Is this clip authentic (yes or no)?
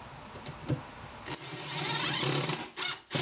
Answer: yes